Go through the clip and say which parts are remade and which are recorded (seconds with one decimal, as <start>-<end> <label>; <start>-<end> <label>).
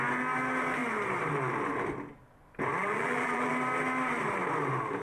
0.0-2.8 recorded; 2.8-3.5 remade; 3.5-5.0 recorded